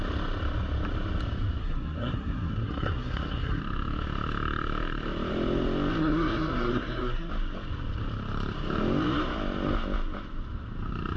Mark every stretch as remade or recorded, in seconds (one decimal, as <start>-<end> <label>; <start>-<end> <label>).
0.0-1.6 recorded; 1.6-3.6 remade; 3.6-6.0 recorded; 6.0-7.3 remade; 7.3-11.2 recorded

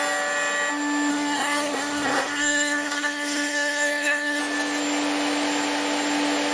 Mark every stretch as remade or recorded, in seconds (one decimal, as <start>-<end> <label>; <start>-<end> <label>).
0.0-1.1 recorded; 1.1-4.4 remade; 4.4-6.5 recorded